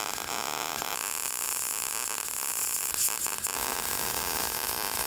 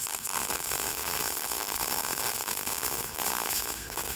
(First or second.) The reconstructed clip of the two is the second